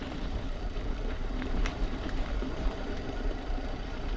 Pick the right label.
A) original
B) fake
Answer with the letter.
B